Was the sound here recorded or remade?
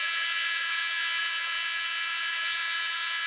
remade